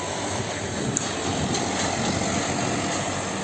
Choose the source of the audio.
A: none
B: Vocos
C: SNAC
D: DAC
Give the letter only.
A